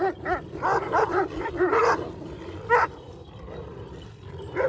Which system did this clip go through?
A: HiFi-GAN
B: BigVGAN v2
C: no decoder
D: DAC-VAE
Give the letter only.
C